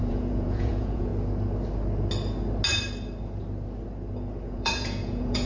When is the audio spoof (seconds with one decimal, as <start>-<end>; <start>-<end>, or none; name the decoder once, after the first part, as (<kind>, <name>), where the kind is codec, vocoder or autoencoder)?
0.0-1.1 (vocoder, Vocos); 4.4-5.5